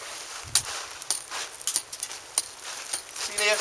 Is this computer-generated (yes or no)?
no